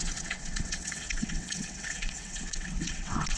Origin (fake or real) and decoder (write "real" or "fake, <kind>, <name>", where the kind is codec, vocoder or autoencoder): fake, vocoder, WaveNeXt